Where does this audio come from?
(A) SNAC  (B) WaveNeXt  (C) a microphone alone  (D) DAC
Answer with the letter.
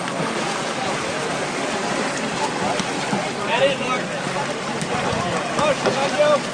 C